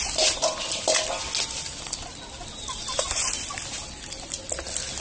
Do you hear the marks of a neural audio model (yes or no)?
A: no